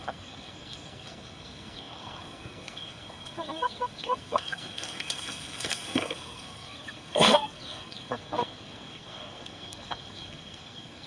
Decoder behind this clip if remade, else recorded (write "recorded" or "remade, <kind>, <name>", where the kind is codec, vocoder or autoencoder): remade, codec, SNAC